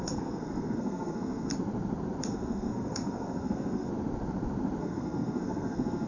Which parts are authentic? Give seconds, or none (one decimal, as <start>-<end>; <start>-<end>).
1.5-2.3; 3.9-4.8